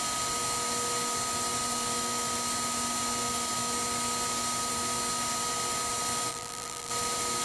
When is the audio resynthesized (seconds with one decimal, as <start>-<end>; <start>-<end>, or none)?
6.3-6.9

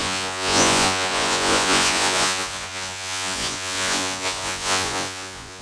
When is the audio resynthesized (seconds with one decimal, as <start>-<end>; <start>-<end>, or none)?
0.0-5.6

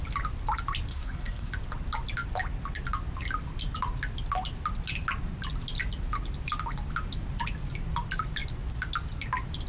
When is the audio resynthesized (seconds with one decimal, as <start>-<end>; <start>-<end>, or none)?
0.9-1.5

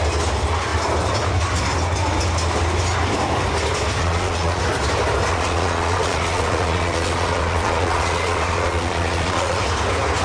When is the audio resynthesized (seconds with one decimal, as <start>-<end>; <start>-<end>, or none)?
4.0-4.6; 5.3-9.6

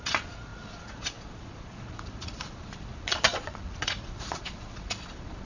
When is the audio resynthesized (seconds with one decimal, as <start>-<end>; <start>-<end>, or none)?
0.0-5.5

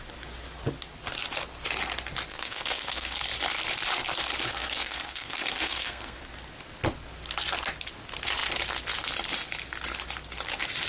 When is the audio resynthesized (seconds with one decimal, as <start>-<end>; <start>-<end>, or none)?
2.3-3.2; 4.5-6.2